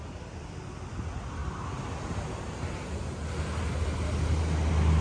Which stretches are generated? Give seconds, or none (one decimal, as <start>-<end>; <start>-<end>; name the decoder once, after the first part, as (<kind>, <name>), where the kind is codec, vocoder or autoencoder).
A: none